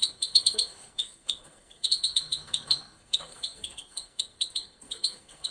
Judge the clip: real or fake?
fake